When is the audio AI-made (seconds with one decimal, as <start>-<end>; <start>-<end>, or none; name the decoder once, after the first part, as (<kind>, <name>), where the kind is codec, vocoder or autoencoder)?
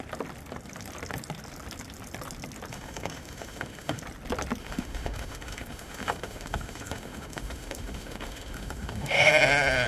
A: 2.7-4.0 (autoencoder, DAC-VAE); 4.6-9.3